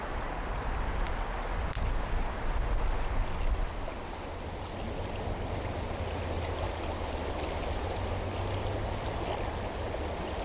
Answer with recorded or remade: recorded